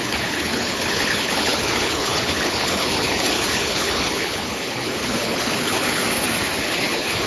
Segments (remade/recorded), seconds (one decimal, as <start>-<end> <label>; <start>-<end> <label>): 0.0-6.0 remade; 6.0-6.6 recorded; 6.6-7.3 remade